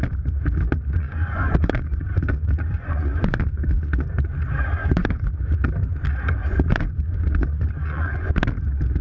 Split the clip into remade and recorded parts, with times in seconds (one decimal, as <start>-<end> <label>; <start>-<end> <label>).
0.0-1.0 recorded; 1.0-3.9 remade; 3.9-4.8 recorded; 4.8-5.3 remade; 5.3-6.4 recorded; 6.4-8.3 remade; 8.3-9.0 recorded